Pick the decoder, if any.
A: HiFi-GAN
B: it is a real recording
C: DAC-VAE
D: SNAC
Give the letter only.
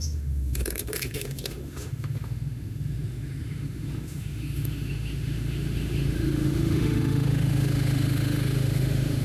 C